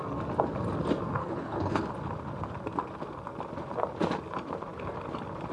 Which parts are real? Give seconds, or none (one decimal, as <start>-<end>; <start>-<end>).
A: 0.0-1.2; 1.8-5.5